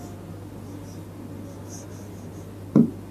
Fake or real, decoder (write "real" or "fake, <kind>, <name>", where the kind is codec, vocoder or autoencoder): real